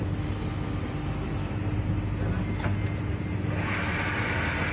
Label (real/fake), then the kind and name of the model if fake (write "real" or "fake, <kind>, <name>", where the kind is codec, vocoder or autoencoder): real